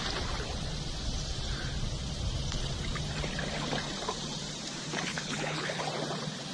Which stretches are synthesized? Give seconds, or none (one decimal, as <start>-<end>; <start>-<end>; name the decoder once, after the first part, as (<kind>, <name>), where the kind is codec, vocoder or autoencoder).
5.1-5.8 (codec, HILCodec)